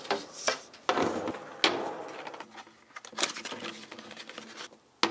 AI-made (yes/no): no